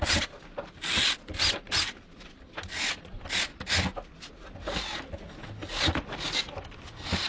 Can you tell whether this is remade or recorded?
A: recorded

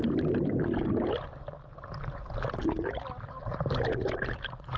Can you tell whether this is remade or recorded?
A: recorded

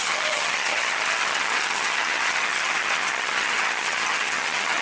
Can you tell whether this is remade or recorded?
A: remade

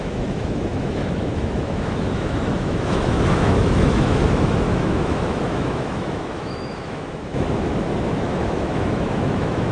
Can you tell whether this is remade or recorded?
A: remade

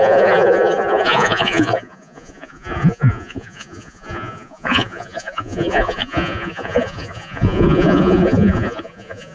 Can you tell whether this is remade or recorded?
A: remade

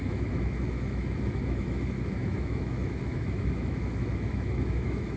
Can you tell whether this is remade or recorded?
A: remade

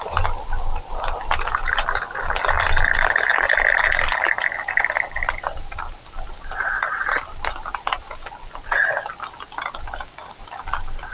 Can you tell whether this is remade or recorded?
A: recorded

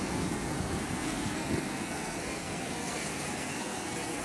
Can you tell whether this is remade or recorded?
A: remade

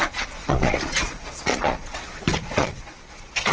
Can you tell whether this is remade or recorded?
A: remade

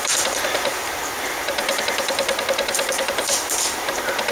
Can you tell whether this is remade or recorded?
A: remade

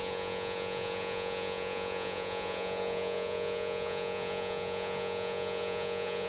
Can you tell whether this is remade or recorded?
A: remade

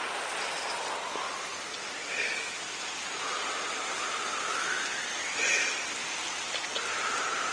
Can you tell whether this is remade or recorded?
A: recorded